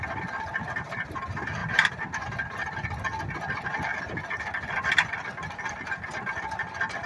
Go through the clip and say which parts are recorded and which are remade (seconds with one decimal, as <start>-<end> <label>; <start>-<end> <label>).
0.0-1.6 recorded; 1.6-2.3 remade; 2.3-7.1 recorded